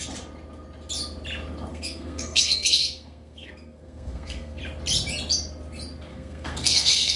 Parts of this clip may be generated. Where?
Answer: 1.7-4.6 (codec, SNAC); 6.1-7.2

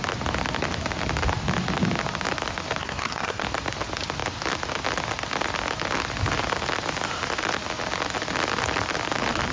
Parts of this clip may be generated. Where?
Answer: 2.8-3.4 (codec, SNAC)

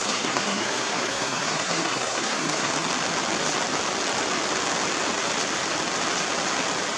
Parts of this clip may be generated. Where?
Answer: 0.0-2.7 (codec, SNAC)

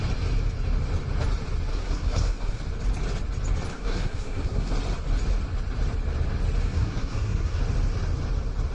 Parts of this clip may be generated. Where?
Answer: 1.7-2.6 (codec, SNAC); 3.7-4.7; 6.6-7.6

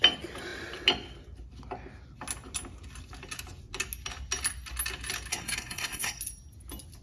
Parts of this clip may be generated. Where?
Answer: 5.3-6.2 (codec, SNAC)

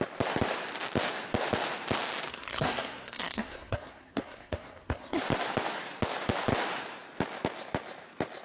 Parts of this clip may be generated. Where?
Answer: 2.3-5.2 (codec, SNAC)

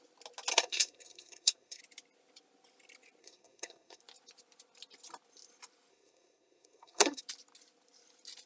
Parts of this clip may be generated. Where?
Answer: 0.5-1.8 (codec, SNAC); 3.2-4.0; 5.9-7.2

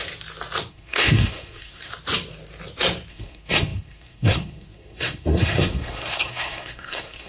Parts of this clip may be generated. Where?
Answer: 0.7-1.9 (codec, SNAC); 3.1-7.3